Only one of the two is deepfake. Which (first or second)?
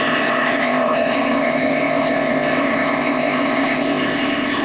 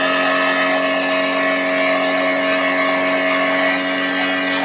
first